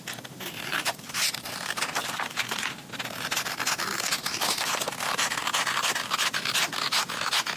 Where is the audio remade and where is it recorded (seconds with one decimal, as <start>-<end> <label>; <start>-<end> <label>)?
0.0-0.7 recorded; 0.7-2.4 remade; 2.4-7.6 recorded

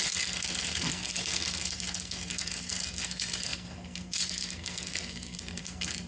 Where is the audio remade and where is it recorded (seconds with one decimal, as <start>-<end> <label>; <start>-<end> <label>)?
0.0-6.1 remade

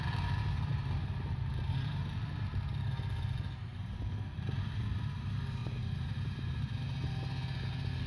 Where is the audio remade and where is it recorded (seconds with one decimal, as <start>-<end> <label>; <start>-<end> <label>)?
0.0-0.7 recorded; 0.7-2.0 remade; 2.0-5.6 recorded; 5.6-7.1 remade; 7.1-8.1 recorded

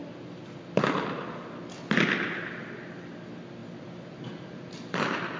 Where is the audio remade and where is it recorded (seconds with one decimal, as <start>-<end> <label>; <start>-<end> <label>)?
0.0-5.4 recorded